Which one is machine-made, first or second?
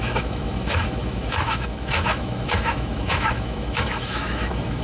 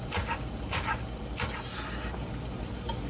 first